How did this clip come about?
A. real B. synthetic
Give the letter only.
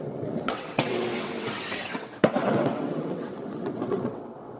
B